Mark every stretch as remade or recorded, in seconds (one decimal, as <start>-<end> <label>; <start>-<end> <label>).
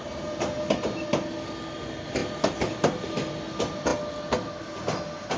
0.0-5.4 recorded